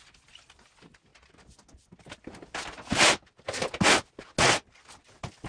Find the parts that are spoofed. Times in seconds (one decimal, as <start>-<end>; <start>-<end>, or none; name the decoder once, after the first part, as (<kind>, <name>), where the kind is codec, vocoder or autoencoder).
none